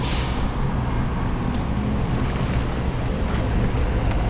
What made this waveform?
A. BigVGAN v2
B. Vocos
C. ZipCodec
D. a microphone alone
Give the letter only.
D